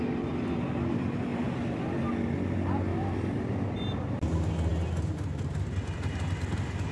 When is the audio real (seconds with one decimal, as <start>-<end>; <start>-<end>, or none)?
0.0-2.9; 3.5-6.9